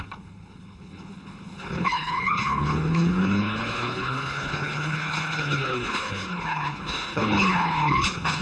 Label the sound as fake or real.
fake